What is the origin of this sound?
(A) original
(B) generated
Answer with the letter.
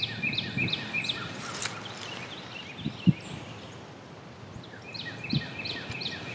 A